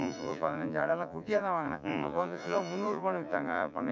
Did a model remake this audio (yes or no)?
yes